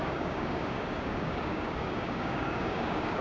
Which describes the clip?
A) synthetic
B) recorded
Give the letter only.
A